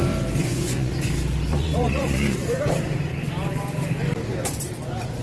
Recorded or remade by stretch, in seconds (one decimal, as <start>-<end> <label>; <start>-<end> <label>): 0.0-0.4 recorded; 0.4-1.1 remade; 1.1-1.5 recorded; 1.5-2.7 remade; 2.7-5.2 recorded